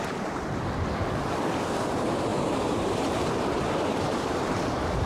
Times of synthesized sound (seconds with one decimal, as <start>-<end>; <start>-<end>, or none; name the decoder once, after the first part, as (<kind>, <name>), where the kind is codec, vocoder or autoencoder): 0.0-0.6 (vocoder, BigVGAN v2); 1.9-5.1